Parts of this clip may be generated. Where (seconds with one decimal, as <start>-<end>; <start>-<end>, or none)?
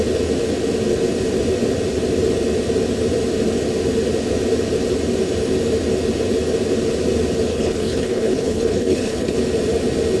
7.5-9.4